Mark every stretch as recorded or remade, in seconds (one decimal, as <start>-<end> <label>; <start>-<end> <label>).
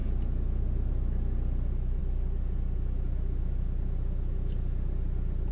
0.0-5.5 recorded